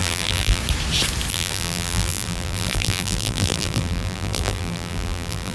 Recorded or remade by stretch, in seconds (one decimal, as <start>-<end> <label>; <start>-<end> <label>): 0.0-0.6 remade; 0.6-1.3 recorded; 1.3-5.5 remade

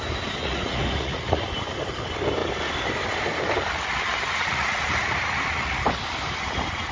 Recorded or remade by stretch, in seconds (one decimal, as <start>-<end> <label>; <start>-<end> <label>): 0.0-0.4 recorded; 0.4-1.4 remade; 1.4-4.4 recorded; 4.4-5.8 remade; 5.8-6.9 recorded

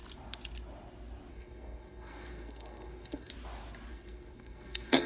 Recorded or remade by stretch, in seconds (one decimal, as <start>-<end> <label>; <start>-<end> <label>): 0.0-1.3 recorded; 1.3-3.3 remade; 3.3-3.9 recorded; 3.9-5.1 remade

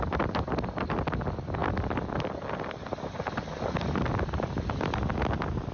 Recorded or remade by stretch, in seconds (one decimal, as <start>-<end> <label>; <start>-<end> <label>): 0.0-5.7 recorded

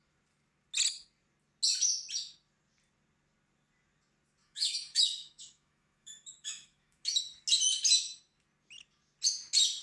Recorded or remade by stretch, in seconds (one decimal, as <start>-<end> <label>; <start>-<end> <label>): 0.0-4.4 recorded; 4.4-7.2 remade; 7.2-9.8 recorded

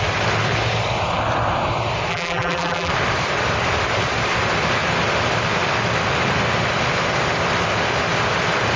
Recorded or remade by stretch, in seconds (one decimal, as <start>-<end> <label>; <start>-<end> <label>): 0.0-2.1 recorded; 2.1-2.9 remade; 2.9-8.8 recorded